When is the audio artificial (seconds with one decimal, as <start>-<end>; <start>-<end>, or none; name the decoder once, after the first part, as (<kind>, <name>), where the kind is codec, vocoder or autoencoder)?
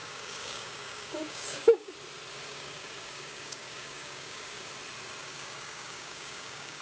0.0-1.9 (codec, DAC); 2.5-4.7; 5.2-6.8